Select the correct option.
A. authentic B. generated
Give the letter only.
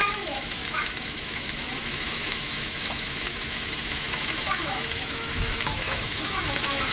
B